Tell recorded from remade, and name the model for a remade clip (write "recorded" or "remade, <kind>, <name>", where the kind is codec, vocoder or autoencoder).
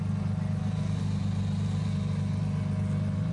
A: recorded